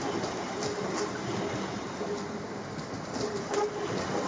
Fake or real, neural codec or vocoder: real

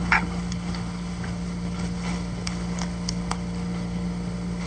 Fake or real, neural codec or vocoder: fake, codec, HILCodec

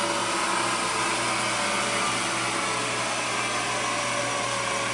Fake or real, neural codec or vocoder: real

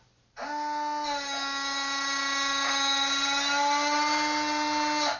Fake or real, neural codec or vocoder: real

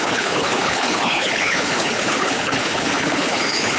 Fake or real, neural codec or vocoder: fake, codec, HILCodec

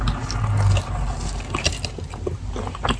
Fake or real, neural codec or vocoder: real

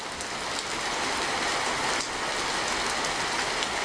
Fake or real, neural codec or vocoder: real